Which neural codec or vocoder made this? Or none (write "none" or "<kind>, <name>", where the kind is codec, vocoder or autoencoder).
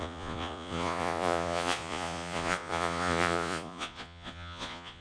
vocoder, Vocos